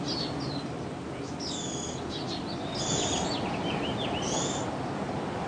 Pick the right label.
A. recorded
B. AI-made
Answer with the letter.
A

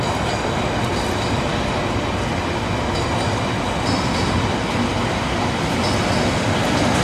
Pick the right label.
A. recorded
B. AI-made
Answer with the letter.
A